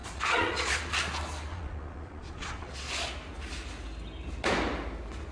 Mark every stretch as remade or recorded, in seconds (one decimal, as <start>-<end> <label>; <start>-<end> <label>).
0.0-0.8 remade; 0.8-1.5 recorded; 1.5-2.7 remade; 2.7-5.3 recorded